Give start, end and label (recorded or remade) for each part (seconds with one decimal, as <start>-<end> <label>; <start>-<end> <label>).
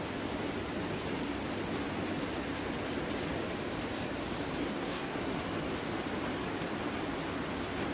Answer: 0.0-4.6 recorded; 4.6-5.4 remade; 5.4-7.9 recorded